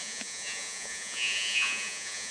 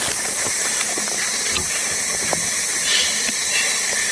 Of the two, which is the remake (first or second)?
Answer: first